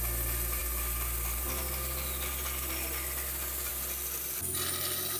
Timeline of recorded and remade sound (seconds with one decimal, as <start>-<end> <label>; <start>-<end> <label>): 0.0-5.2 recorded